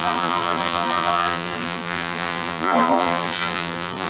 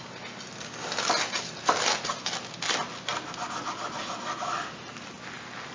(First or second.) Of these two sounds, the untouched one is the second